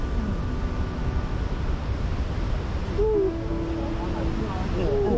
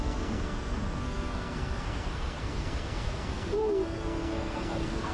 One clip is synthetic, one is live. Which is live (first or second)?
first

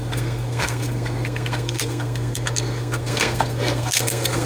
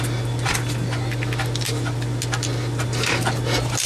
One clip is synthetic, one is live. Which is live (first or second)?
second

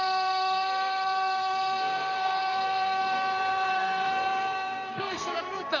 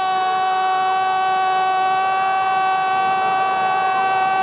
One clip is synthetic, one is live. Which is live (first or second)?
second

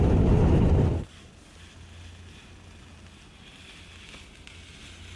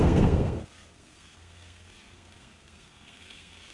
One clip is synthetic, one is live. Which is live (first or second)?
first